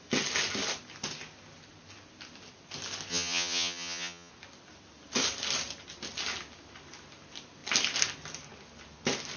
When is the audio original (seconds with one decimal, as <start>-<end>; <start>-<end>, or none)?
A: 0.0-3.1; 4.3-9.4